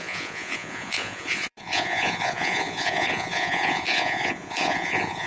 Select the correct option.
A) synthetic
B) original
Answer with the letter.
A